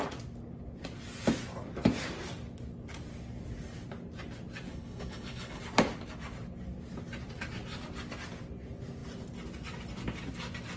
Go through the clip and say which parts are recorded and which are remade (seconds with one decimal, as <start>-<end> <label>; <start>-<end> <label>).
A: 0.0-4.7 recorded; 4.7-5.6 remade; 5.6-10.8 recorded

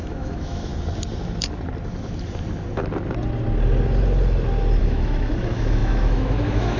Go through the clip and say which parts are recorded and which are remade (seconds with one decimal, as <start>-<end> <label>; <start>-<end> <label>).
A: 0.0-0.7 remade; 0.7-4.8 recorded; 4.8-6.8 remade

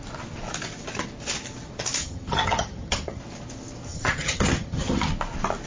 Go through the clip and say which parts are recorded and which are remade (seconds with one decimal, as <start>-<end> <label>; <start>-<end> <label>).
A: 0.0-2.0 recorded; 2.0-3.2 remade; 3.2-3.9 recorded; 3.9-5.1 remade; 5.1-5.7 recorded

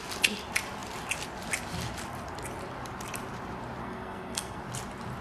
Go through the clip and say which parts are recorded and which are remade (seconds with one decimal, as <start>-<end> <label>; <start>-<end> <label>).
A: 0.0-3.8 recorded; 3.8-4.6 remade; 4.6-5.2 recorded

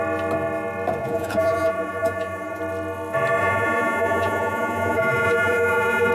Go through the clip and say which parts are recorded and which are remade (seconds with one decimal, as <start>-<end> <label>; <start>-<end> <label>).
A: 0.0-1.0 recorded; 1.0-2.6 remade; 2.6-3.4 recorded; 3.4-6.1 remade

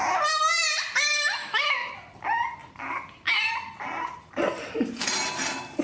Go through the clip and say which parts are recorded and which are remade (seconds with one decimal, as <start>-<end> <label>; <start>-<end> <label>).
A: 0.0-1.4 recorded; 1.4-1.9 remade; 1.9-5.8 recorded